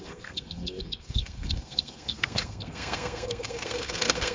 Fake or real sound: fake